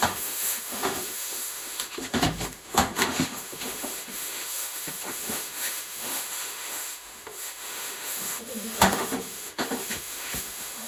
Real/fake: fake